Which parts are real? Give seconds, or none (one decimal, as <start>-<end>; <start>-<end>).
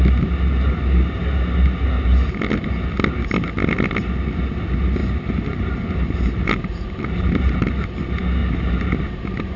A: 0.0-5.0; 7.7-8.4